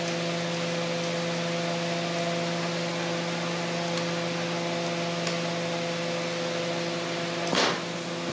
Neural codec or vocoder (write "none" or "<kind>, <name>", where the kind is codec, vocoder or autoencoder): none